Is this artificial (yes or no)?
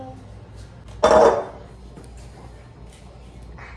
no